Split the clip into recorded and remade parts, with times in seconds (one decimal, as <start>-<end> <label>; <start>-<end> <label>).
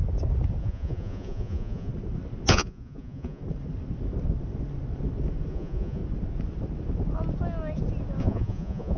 0.0-0.6 recorded; 0.6-1.9 remade; 1.9-2.5 recorded; 2.5-3.4 remade; 3.4-5.5 recorded; 5.5-6.0 remade; 6.0-8.2 recorded; 8.2-9.0 remade